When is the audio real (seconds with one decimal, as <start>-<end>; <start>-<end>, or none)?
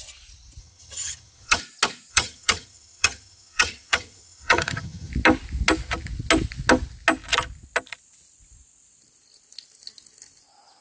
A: 0.0-0.6; 1.6-2.1; 5.1-10.8